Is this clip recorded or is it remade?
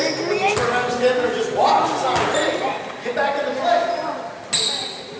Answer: recorded